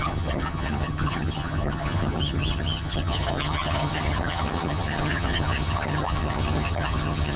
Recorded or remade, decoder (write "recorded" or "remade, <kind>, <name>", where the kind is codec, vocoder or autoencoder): remade, vocoder, HiFi-GAN